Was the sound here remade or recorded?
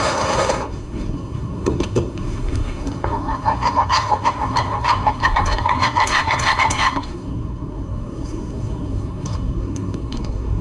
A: remade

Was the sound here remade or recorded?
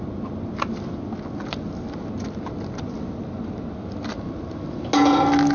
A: recorded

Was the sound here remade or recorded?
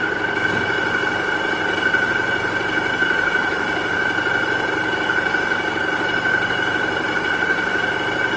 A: recorded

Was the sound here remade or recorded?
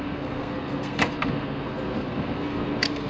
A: remade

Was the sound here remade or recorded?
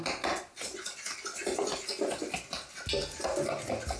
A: recorded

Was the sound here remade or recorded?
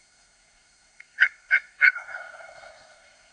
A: remade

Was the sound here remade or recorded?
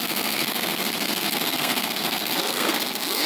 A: remade